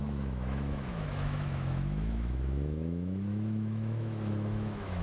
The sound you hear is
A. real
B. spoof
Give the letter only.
B